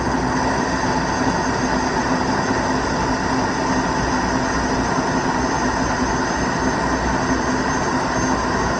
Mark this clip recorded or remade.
recorded